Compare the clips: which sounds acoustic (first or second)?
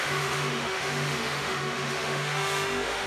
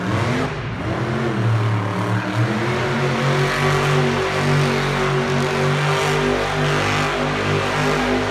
second